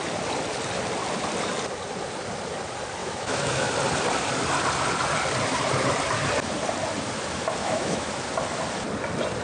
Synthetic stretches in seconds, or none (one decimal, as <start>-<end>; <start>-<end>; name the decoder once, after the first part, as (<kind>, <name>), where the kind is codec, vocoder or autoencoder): 3.0-3.7 (autoencoder, DAC-VAE); 7.6-8.1